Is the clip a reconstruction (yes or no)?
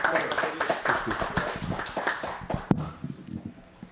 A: no